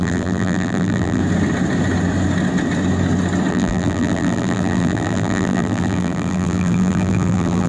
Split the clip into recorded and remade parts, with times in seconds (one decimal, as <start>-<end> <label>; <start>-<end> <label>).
0.0-1.2 remade; 1.2-3.5 recorded; 3.5-7.7 remade